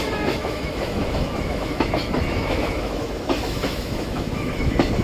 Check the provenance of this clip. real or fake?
fake